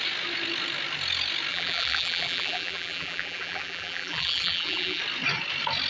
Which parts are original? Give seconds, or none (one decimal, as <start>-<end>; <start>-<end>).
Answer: 0.0-1.5; 5.0-5.9